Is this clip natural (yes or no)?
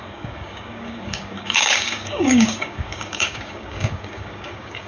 no